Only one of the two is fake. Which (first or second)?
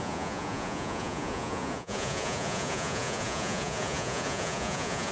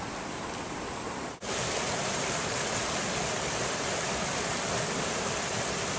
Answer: first